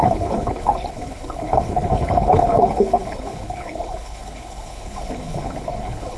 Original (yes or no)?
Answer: no